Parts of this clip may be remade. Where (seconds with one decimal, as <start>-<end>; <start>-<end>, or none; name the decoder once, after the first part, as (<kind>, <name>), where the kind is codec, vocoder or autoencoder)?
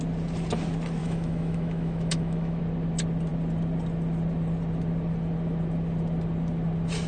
1.0-2.6 (autoencoder, DAC-VAE)